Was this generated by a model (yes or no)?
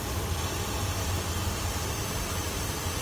no